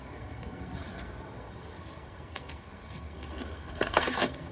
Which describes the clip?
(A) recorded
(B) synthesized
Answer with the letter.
B